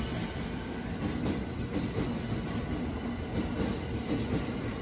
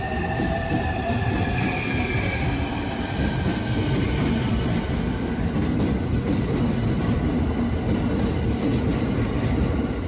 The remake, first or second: second